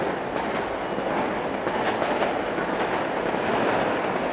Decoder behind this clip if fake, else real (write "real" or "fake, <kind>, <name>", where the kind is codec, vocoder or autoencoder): real